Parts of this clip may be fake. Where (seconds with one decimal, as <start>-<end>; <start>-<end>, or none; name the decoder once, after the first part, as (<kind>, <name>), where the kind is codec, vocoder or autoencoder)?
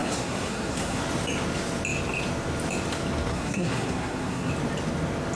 0.0-1.0 (codec, SNAC); 3.3-4.5